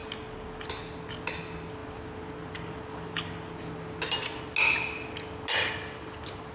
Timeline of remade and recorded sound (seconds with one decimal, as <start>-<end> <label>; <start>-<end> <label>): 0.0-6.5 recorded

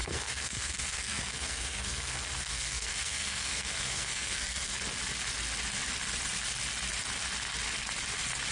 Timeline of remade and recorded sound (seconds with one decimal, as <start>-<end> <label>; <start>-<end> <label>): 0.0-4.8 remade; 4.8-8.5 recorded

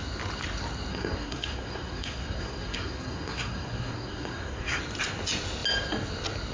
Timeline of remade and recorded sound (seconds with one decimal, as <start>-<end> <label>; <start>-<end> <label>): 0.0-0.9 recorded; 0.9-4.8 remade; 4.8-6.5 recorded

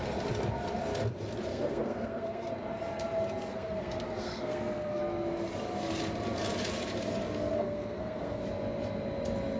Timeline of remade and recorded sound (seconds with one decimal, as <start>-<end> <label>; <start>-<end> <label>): 0.0-1.5 recorded; 1.5-2.5 remade; 2.5-3.5 recorded; 3.5-5.0 remade; 5.0-7.5 recorded; 7.5-8.4 remade; 8.4-9.6 recorded